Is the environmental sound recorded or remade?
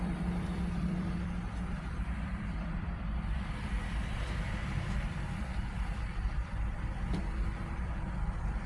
remade